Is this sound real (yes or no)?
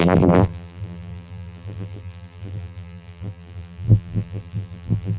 no